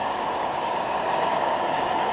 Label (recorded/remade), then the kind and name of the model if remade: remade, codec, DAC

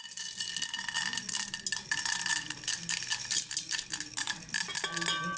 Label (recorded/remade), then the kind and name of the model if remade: recorded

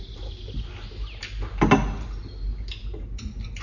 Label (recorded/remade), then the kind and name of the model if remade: recorded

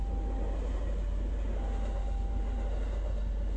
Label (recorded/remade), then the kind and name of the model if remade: recorded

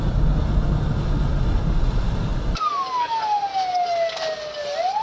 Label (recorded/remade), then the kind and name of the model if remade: recorded